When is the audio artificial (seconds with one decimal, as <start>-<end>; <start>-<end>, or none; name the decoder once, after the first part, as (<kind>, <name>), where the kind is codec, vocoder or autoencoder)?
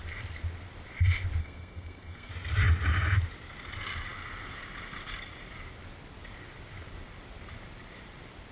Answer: 1.4-2.3 (codec, SNAC)